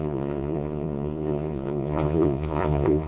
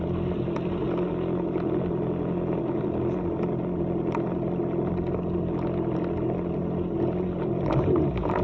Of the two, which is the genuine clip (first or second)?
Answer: second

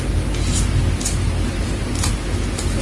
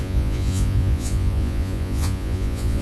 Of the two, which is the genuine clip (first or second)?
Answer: first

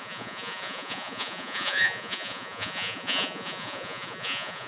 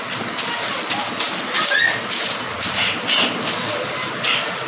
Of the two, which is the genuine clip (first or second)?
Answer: second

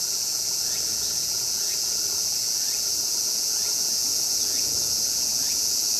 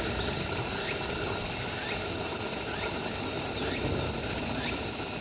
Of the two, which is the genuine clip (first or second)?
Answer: second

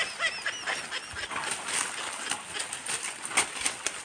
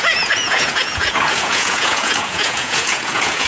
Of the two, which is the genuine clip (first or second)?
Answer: first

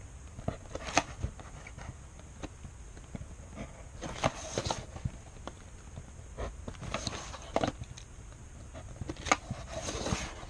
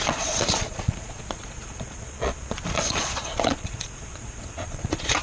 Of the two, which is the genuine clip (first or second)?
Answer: first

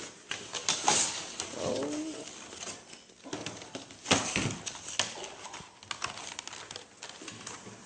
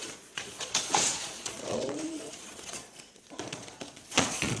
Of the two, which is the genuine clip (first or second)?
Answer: first